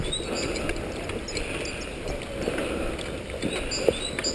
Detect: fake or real real